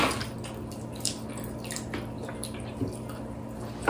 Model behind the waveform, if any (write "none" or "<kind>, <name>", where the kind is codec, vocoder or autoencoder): none